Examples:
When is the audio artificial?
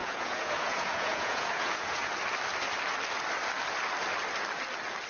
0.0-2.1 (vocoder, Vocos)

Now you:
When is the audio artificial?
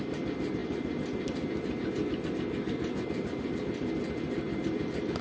none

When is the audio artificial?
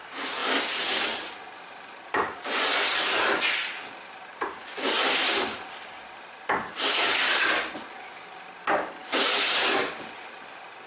9.0-10.4 (vocoder, BigVGAN v2)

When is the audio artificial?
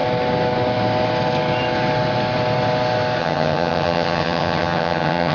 3.2-5.3 (vocoder, HiFi-GAN)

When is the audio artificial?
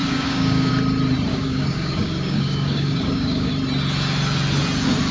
0.0-0.7 (codec, DAC); 1.3-3.5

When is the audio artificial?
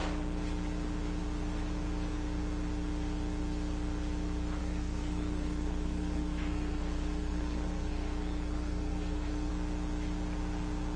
4.6-9.5 (codec, SNAC)